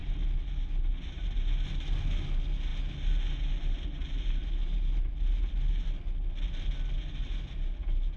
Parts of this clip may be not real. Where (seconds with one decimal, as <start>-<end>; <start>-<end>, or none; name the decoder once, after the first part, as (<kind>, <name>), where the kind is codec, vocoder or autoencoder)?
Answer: none